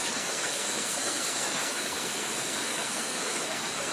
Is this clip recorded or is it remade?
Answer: remade